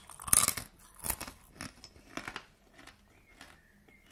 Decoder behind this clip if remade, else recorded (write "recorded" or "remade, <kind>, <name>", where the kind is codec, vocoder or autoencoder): recorded